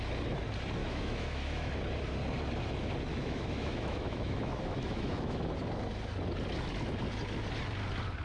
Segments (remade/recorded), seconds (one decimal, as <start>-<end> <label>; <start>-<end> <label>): 0.0-0.8 recorded; 0.8-1.7 remade; 1.7-3.1 recorded; 3.1-5.4 remade; 5.4-8.2 recorded